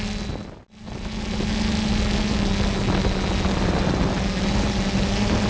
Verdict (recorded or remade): recorded